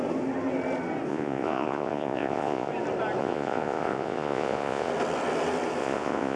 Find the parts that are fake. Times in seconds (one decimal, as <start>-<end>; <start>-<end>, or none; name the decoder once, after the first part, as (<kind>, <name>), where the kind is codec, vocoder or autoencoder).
1.1-2.7 (vocoder, Vocos); 3.2-4.9; 5.8-6.4